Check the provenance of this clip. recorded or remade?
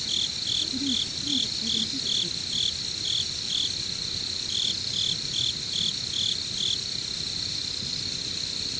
recorded